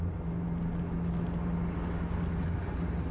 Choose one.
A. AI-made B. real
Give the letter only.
B